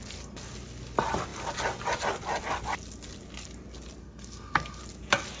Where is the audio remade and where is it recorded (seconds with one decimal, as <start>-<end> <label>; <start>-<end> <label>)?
0.0-4.0 recorded; 4.0-4.8 remade; 4.8-5.4 recorded